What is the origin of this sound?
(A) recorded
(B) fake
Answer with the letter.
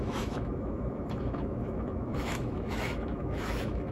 B